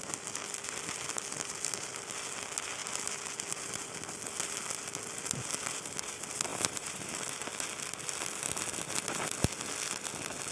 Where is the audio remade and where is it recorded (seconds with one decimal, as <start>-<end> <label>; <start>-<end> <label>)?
0.0-6.5 recorded; 6.5-7.1 remade; 7.1-10.5 recorded